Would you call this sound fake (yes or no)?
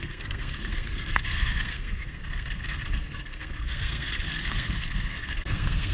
yes